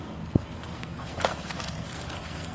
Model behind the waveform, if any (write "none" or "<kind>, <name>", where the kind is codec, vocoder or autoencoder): codec, SNAC